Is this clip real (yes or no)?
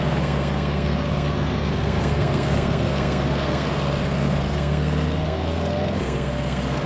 no